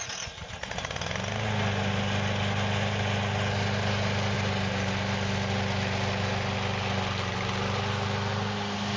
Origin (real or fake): real